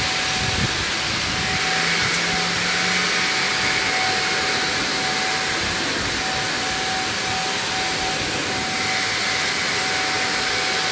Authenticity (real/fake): real